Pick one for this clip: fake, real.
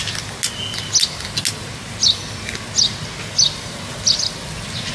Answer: real